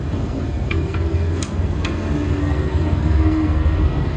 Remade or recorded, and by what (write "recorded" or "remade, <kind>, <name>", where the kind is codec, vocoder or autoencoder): remade, codec, SNAC